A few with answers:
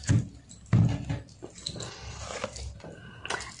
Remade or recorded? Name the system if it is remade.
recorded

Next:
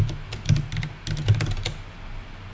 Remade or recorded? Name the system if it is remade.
recorded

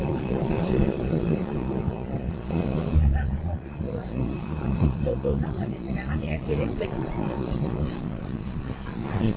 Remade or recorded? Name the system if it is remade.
remade, vocoder, Vocos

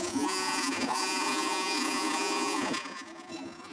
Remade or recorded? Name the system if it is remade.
remade, vocoder, Vocos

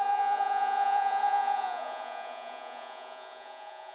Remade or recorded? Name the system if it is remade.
remade, vocoder, Vocos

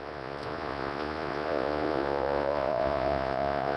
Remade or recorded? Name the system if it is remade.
remade, vocoder, Vocos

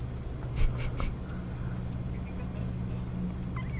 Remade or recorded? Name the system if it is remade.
recorded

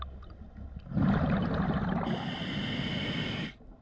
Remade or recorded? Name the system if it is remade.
recorded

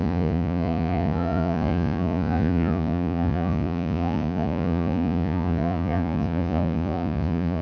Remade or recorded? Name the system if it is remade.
remade, vocoder, Vocos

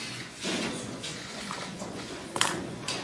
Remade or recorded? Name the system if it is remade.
remade, vocoder, Vocos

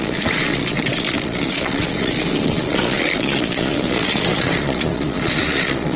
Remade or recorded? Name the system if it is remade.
remade, vocoder, Vocos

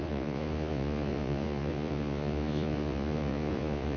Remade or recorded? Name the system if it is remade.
remade, vocoder, Vocos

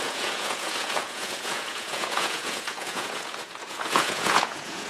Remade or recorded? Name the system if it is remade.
remade, vocoder, Vocos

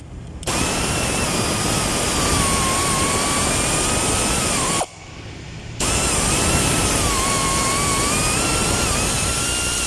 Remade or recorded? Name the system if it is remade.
recorded